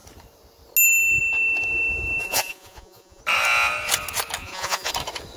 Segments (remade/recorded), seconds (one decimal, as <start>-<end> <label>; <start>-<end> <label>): 0.0-2.2 recorded; 2.2-3.2 remade; 3.2-4.4 recorded; 4.4-4.9 remade; 4.9-5.4 recorded